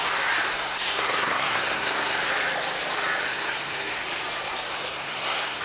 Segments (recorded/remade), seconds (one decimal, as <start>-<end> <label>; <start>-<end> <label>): 0.0-0.5 recorded; 0.5-2.3 remade; 2.3-3.3 recorded; 3.3-4.0 remade; 4.0-4.7 recorded; 4.7-5.6 remade